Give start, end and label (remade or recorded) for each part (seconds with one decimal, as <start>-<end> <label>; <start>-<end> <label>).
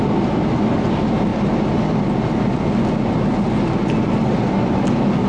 0.0-5.3 recorded